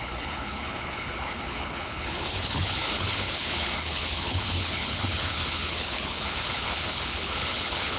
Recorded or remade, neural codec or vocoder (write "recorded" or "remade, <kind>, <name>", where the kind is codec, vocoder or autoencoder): remade, codec, HILCodec